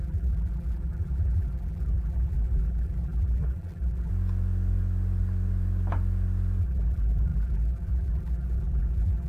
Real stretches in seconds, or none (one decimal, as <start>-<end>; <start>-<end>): 4.1-6.6